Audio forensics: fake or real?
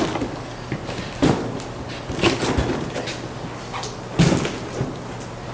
real